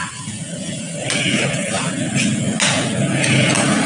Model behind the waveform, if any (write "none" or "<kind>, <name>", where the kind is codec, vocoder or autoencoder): none